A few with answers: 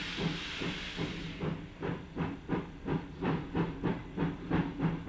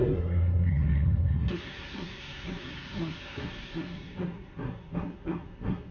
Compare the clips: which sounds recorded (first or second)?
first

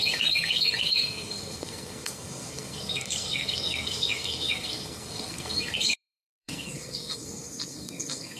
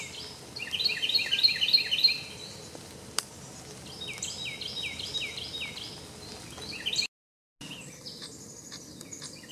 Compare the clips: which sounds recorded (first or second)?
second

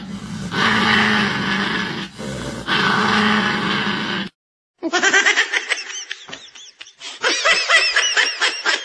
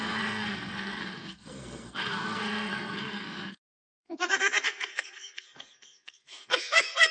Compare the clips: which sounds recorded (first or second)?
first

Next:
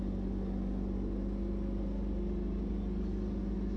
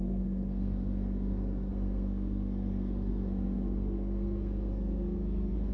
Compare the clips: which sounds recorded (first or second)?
first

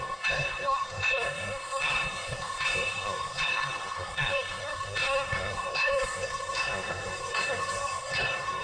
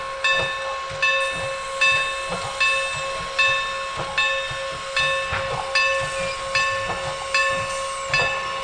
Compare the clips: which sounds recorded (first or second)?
second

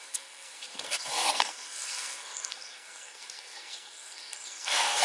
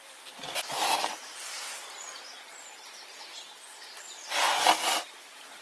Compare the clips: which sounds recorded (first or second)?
second